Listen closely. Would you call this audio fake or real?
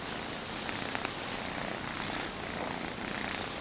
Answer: real